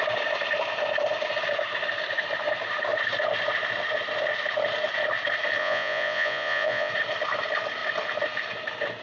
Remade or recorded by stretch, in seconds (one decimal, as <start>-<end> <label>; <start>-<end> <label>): 0.0-5.6 recorded; 5.6-6.9 remade; 6.9-9.0 recorded